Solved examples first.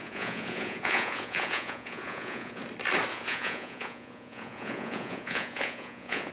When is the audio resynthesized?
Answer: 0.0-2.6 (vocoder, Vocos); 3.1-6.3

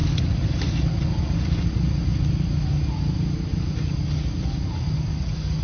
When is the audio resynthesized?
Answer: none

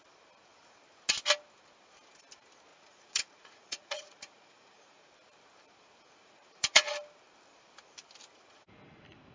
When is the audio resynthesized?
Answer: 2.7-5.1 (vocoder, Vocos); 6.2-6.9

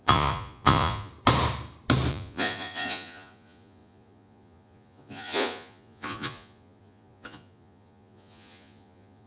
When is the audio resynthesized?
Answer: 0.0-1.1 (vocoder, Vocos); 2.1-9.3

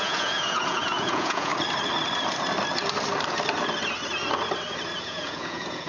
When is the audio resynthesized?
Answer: 0.0-1.5 (vocoder, Vocos); 5.0-5.9